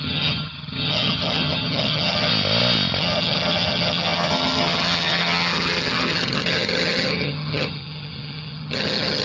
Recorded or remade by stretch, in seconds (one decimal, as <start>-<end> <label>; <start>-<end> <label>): 0.0-2.3 remade; 2.3-3.0 recorded; 3.0-9.2 remade